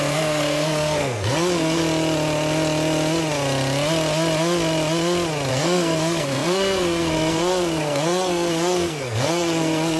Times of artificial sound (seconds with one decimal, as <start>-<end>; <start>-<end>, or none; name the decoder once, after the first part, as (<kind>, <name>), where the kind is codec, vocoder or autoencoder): 0.0-1.8 (codec, SNAC); 5.5-10.0